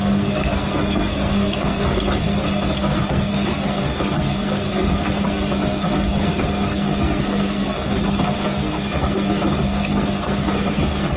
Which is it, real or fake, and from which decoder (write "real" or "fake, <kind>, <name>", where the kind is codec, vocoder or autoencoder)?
fake, codec, SNAC